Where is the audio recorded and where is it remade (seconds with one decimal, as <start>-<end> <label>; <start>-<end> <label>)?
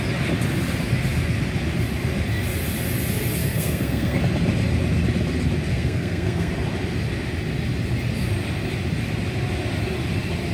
0.0-3.4 recorded; 3.4-4.2 remade; 4.2-5.7 recorded; 5.7-6.5 remade; 6.5-10.5 recorded